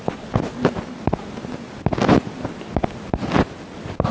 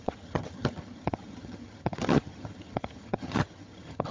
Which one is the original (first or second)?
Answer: first